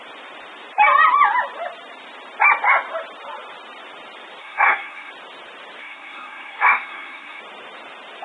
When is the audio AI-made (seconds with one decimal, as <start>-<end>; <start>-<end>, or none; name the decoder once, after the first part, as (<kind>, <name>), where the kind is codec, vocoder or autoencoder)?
4.4-5.1 (codec, SNAC); 5.8-7.4